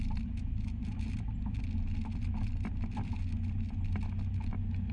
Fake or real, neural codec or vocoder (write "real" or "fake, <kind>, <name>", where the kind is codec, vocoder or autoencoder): real